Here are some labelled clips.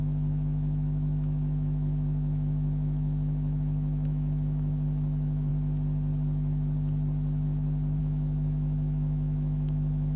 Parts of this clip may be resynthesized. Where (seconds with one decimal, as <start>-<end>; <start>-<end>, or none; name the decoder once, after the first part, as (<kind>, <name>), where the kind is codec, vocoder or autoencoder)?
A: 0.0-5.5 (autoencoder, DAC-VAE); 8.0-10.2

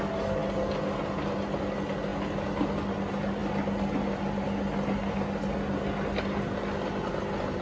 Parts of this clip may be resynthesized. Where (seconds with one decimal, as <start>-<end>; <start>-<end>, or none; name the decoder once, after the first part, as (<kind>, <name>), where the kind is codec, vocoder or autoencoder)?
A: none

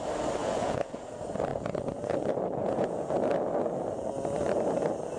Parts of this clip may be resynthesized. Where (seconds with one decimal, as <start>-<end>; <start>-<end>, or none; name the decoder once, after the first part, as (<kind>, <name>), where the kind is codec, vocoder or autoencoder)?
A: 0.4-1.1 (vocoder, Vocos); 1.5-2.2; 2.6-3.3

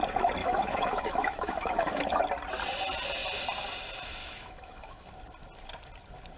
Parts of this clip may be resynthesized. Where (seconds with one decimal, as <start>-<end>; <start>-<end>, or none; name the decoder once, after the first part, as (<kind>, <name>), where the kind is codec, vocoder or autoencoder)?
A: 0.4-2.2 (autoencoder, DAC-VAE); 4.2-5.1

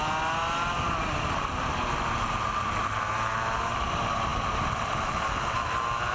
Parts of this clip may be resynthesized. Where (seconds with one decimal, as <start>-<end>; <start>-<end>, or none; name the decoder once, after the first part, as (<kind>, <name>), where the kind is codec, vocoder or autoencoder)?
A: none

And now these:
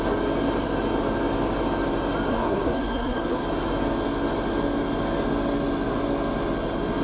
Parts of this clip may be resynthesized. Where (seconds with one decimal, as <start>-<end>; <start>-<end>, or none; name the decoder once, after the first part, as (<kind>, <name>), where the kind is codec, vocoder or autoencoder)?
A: 2.3-3.4 (codec, SNAC)

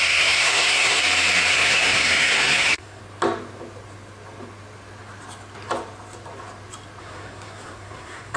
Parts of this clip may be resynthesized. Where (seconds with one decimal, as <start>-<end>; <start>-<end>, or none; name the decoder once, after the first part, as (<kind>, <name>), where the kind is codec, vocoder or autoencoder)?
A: 0.0-1.0 (codec, SNAC); 1.5-3.0; 7.0-8.4

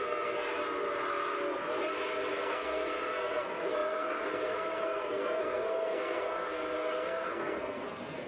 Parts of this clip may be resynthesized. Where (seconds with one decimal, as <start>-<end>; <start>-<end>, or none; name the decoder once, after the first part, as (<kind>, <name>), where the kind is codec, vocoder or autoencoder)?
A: 0.0-0.5 (codec, SNAC); 2.3-8.3